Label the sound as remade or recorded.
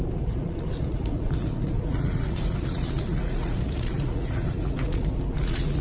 remade